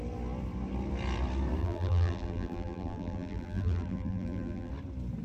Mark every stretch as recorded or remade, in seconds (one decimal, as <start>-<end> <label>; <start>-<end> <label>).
0.0-1.6 recorded; 1.6-4.7 remade; 4.7-5.2 recorded